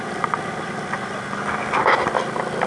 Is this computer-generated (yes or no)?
no